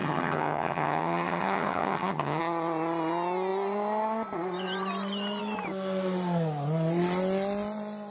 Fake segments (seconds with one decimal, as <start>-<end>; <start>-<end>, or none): 0.0-2.4